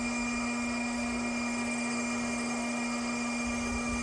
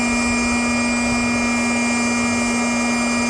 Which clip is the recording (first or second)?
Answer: second